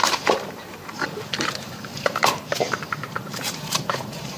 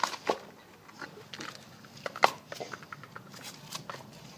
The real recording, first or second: second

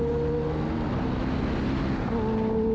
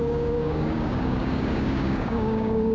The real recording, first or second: first